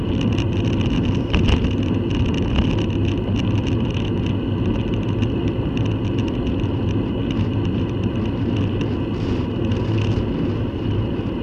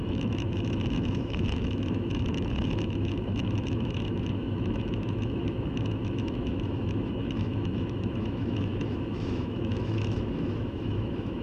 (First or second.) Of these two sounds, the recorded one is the first